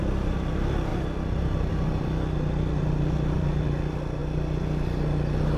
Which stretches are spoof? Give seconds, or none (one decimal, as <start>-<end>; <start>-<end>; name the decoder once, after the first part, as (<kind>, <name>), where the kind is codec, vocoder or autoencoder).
none